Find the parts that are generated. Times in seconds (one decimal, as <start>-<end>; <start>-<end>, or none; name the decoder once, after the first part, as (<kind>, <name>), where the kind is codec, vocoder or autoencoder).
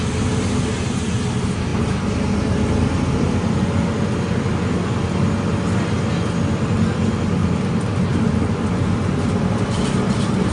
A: none